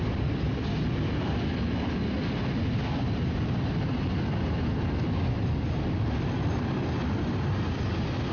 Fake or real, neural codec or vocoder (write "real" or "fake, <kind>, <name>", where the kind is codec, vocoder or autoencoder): real